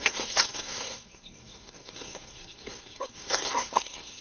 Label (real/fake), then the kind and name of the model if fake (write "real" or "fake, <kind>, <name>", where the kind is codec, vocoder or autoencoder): fake, codec, SNAC